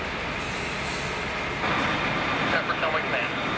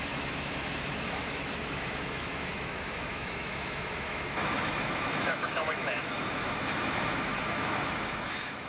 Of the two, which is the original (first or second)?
first